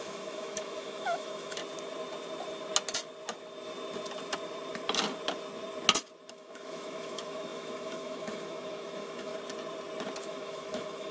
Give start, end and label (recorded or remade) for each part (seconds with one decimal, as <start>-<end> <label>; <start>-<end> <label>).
0.0-1.6 remade; 1.6-6.3 recorded; 6.3-9.3 remade; 9.3-10.2 recorded; 10.2-11.1 remade